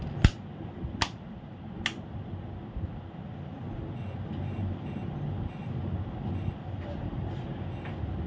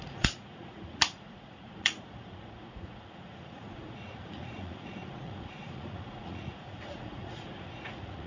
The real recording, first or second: first